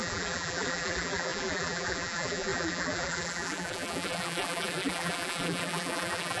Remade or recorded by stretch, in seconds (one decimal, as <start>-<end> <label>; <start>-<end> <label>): 0.0-6.4 remade